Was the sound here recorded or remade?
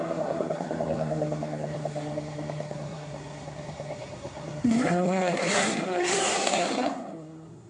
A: remade